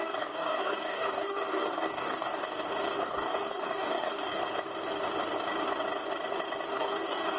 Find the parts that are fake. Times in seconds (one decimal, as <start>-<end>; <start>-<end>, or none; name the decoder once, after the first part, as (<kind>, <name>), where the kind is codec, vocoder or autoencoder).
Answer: 0.0-2.4 (codec, DAC); 3.0-4.4; 6.7-7.4